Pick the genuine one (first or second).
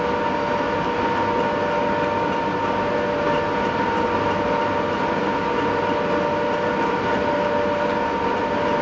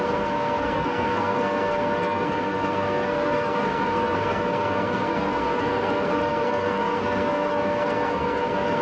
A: first